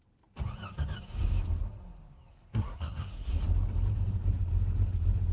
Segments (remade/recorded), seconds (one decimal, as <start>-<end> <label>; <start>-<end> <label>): 0.0-2.3 recorded; 2.3-3.3 remade; 3.3-5.3 recorded